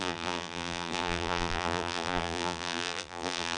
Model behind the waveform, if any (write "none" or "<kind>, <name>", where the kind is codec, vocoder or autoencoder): vocoder, BigVGAN v2